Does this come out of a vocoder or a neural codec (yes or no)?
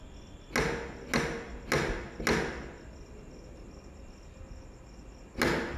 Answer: no